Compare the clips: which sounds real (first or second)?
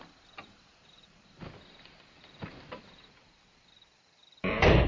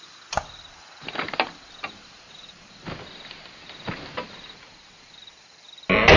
second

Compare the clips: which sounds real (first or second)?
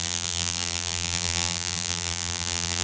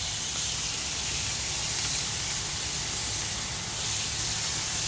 second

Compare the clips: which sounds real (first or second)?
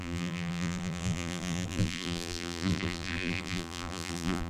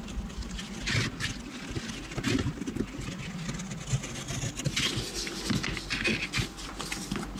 second